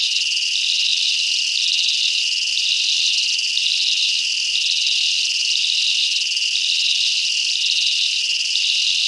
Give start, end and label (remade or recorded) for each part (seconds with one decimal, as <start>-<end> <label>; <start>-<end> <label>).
0.0-9.1 recorded